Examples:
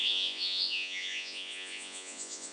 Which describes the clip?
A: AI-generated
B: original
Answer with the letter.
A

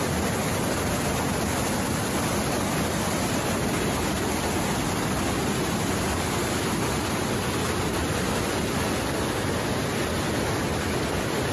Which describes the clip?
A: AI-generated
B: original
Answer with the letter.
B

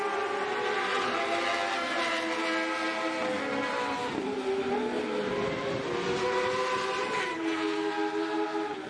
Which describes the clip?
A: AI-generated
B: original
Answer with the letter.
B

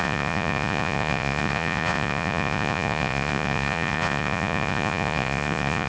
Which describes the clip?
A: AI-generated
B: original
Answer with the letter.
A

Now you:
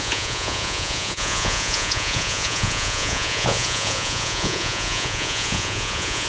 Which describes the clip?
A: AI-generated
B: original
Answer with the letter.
A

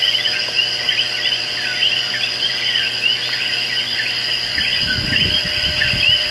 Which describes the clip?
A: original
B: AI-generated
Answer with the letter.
B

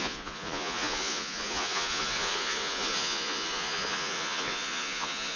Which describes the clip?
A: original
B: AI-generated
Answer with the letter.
B